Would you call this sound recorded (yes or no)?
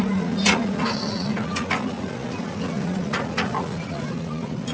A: no